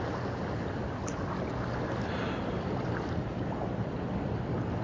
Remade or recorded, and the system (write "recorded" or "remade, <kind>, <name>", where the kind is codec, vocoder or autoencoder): recorded